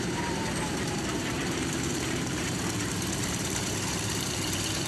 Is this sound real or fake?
fake